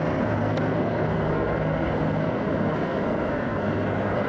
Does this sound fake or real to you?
fake